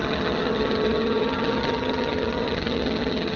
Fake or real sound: fake